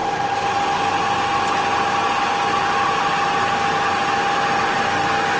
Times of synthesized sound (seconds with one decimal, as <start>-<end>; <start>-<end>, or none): none